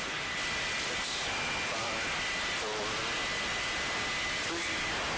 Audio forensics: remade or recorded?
recorded